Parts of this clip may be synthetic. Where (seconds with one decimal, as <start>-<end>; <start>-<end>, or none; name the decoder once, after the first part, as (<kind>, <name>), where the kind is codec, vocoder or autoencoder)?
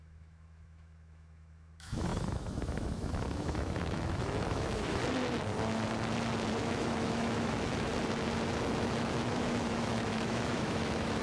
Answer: 0.0-5.0 (autoencoder, DAC-VAE); 6.6-7.9; 8.8-11.2